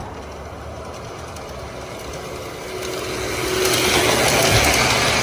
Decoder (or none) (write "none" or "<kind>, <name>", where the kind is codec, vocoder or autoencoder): none